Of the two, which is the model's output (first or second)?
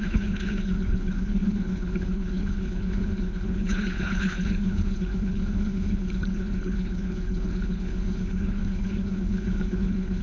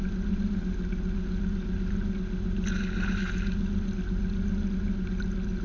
first